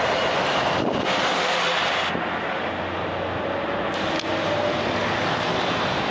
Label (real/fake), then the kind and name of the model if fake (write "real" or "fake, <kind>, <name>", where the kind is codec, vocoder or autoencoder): real